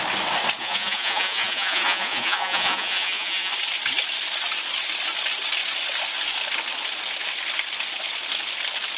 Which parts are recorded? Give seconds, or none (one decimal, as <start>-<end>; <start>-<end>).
0.0-0.6; 3.5-9.0